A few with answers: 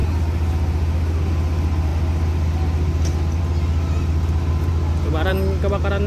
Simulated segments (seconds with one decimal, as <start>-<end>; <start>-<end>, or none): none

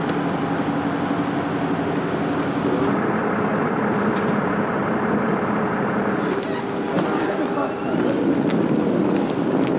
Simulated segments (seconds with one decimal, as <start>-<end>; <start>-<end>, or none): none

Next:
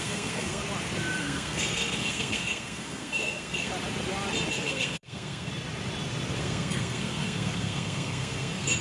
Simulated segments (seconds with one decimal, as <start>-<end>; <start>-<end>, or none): 0.0-0.6; 1.2-3.7; 4.5-5.5; 6.4-8.8